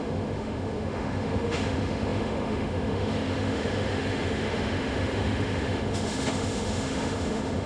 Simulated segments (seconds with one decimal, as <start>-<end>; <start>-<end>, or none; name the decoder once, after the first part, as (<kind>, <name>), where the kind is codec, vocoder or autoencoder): 0.0-7.7 (autoencoder, DAC-VAE)